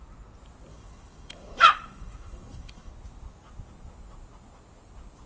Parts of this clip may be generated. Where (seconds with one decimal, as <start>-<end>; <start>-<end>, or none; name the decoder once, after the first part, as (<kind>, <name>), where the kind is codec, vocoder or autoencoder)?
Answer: 0.7-2.9 (autoencoder, DAC-VAE)